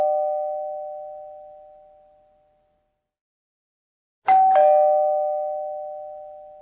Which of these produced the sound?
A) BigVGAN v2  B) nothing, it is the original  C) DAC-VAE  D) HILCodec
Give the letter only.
B